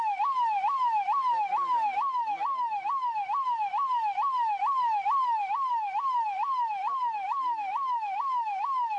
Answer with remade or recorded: recorded